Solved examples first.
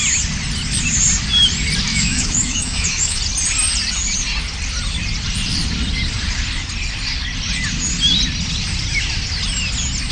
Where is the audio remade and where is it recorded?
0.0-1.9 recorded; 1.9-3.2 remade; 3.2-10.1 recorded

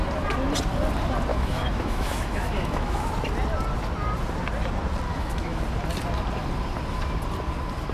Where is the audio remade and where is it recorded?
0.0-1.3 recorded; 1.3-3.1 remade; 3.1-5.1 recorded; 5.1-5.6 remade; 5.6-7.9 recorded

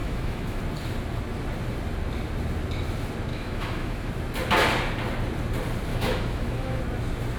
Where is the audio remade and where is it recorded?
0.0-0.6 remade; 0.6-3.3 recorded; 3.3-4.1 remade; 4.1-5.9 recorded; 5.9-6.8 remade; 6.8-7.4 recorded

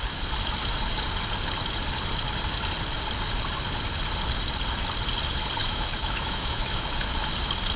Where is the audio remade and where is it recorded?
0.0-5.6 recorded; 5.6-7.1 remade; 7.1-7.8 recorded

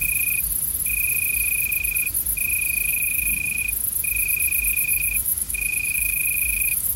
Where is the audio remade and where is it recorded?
0.0-2.9 recorded; 2.9-3.6 remade; 3.6-4.9 recorded; 4.9-7.0 remade

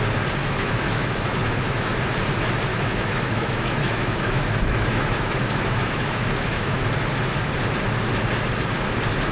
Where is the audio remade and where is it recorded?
0.0-0.4 recorded; 0.4-1.9 remade; 1.9-2.7 recorded; 2.7-6.8 remade; 6.8-9.3 recorded